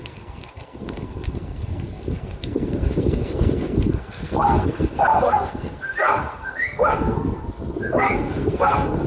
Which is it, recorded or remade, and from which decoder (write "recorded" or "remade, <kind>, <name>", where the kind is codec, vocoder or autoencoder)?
remade, codec, SNAC